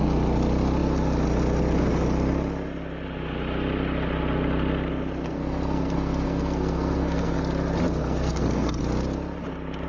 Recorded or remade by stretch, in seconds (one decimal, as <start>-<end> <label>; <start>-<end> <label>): 0.0-5.2 recorded; 5.2-7.4 remade; 7.4-8.0 recorded; 8.0-8.8 remade; 8.8-9.9 recorded